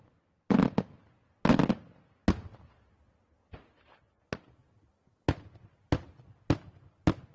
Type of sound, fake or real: real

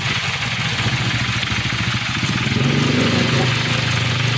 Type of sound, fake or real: fake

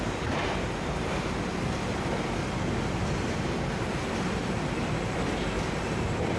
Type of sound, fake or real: fake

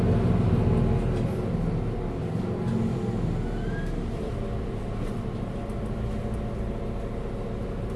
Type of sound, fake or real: real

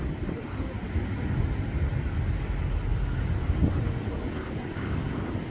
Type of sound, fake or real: real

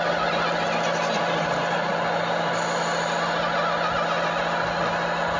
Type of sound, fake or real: real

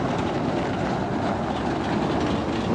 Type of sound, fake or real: real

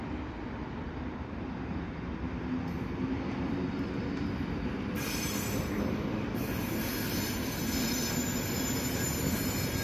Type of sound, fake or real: real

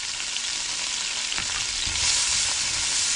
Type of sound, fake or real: real